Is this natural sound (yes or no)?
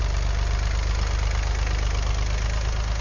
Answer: yes